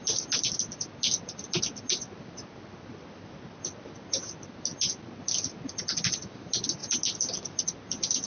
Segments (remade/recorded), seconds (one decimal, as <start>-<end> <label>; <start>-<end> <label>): 0.0-8.3 recorded